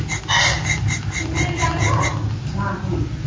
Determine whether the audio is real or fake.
real